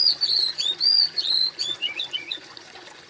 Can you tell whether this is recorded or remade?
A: remade